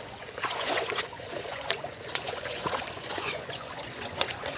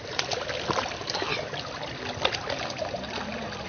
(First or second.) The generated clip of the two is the first